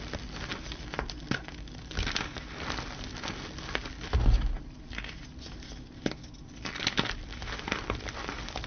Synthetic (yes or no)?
no